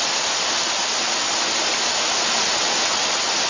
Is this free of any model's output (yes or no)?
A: yes